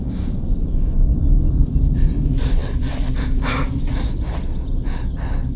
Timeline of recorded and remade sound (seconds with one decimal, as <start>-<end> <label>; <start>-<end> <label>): 0.0-1.6 remade; 1.6-5.6 recorded